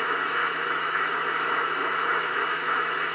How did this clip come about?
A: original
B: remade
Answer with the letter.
B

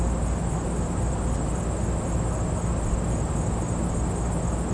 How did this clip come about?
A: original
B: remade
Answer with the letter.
A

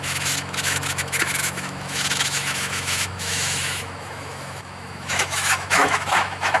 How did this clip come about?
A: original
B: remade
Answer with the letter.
B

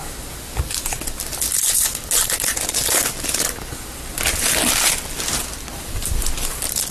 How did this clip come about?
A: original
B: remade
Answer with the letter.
A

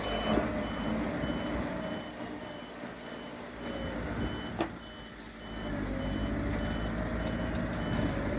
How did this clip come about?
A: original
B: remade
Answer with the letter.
A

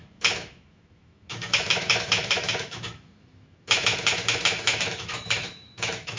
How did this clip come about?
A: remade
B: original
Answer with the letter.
A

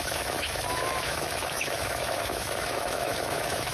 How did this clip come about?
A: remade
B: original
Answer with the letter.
A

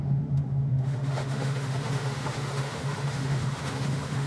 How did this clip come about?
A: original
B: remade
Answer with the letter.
B